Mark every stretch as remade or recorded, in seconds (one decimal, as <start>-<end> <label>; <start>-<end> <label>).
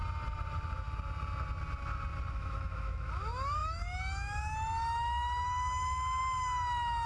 0.0-2.3 recorded; 2.3-7.1 remade